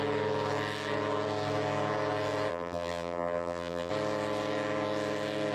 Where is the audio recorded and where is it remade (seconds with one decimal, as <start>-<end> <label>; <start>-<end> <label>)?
0.0-2.5 recorded; 2.5-3.9 remade; 3.9-5.5 recorded